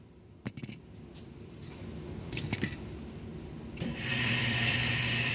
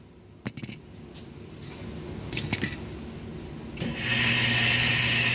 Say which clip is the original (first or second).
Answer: second